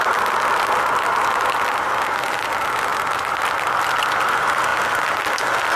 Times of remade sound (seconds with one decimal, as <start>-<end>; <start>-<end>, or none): none

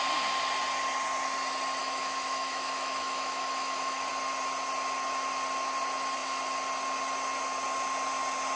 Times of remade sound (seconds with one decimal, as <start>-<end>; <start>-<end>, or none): 1.8-4.1

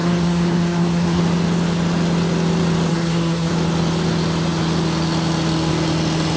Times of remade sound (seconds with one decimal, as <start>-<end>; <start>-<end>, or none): 0.0-1.2; 2.9-3.5

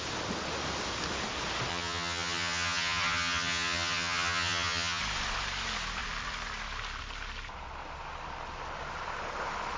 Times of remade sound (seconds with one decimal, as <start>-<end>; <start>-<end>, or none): 1.7-5.0

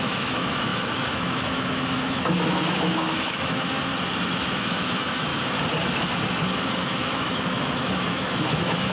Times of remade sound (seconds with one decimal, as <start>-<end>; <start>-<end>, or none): 0.0-3.9; 4.4-5.3; 6.7-8.9

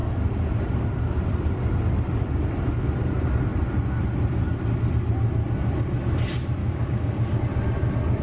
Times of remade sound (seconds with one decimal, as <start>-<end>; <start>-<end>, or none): 6.6-7.4

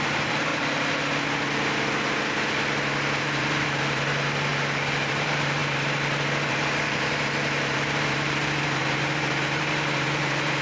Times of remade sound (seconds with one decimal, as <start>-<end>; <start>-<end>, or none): 0.0-0.5; 3.2-4.5; 5.1-10.6